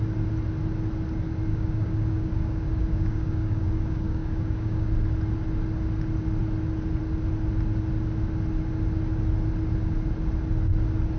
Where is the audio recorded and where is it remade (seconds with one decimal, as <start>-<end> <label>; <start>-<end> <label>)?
0.0-1.5 recorded; 1.5-4.9 remade; 4.9-11.2 recorded

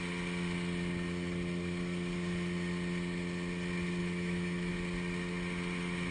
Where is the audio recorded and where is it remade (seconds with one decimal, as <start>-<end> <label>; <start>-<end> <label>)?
0.0-4.0 recorded; 4.0-4.7 remade; 4.7-6.1 recorded